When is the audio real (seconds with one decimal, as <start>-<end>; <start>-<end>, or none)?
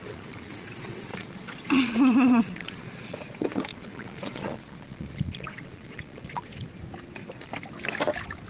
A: 6.5-8.5